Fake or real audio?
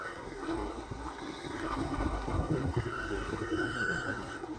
fake